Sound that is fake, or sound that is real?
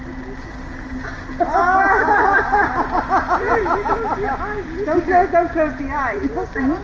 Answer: real